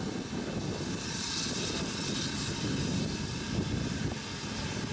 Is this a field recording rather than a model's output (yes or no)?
yes